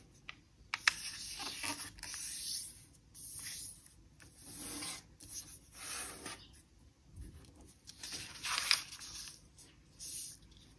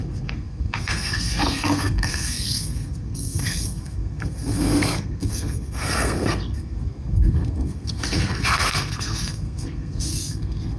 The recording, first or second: first